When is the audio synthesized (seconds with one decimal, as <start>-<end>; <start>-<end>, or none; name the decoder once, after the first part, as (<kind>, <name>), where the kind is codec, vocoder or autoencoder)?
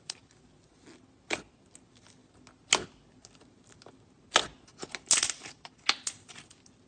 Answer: none